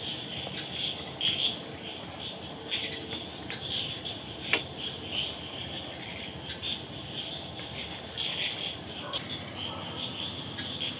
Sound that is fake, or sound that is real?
real